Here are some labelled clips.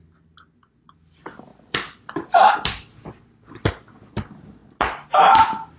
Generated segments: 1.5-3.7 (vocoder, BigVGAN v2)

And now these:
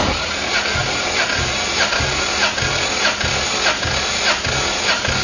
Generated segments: 0.8-1.5 (vocoder, BigVGAN v2)

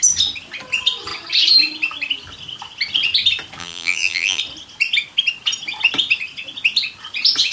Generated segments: 3.6-4.4 (vocoder, BigVGAN v2)

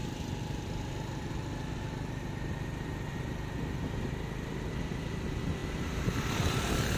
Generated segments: 5.6-7.0 (vocoder, BigVGAN v2)